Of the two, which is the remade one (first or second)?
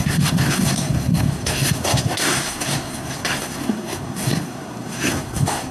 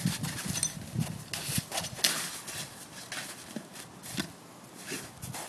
first